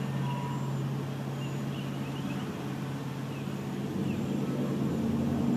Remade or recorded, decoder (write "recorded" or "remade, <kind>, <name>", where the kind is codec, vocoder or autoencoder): recorded